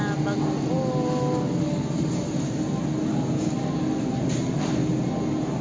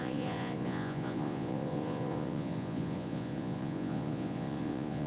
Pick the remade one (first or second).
second